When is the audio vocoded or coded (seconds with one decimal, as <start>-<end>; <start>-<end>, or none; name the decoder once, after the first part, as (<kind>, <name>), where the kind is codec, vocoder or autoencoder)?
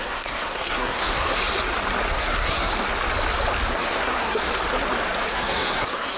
0.0-1.4 (codec, SNAC); 2.1-2.7; 3.7-4.4; 5.3-6.2